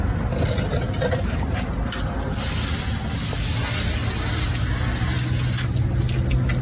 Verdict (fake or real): real